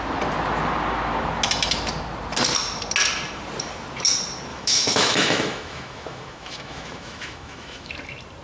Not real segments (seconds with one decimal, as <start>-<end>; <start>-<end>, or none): 4.5-7.9